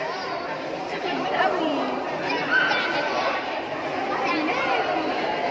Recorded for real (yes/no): yes